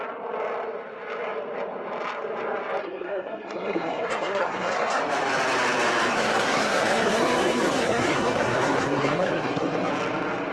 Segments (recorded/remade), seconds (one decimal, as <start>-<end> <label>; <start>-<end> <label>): 0.0-2.8 recorded; 2.8-5.0 remade; 5.0-6.1 recorded; 6.1-9.9 remade; 9.9-10.5 recorded